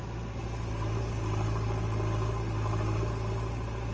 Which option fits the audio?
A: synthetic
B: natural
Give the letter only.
B